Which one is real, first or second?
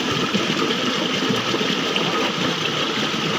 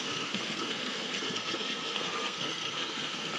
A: first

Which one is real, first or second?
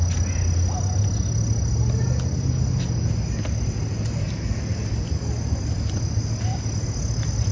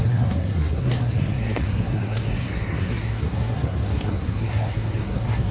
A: first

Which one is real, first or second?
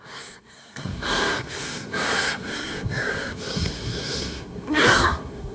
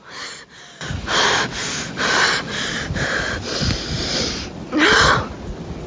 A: second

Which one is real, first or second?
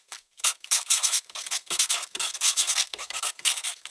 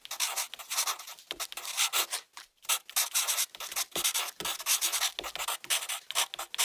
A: second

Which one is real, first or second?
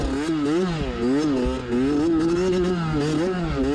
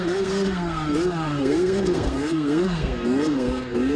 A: first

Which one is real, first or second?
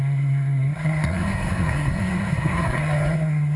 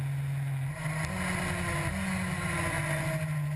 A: second